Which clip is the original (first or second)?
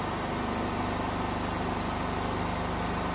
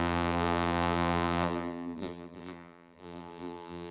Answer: first